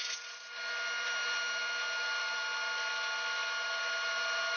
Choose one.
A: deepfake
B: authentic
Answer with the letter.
B